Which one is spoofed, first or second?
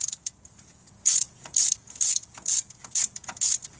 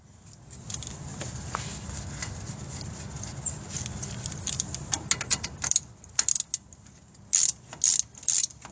first